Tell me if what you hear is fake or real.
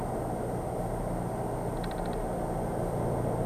real